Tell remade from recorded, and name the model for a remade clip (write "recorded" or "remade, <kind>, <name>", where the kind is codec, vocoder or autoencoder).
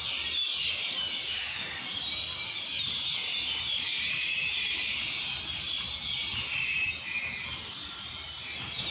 remade, vocoder, BigVGAN v2